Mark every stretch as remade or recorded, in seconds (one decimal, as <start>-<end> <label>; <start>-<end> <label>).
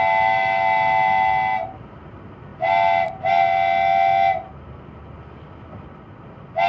0.0-6.7 recorded